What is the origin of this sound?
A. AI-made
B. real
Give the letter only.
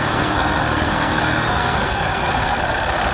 A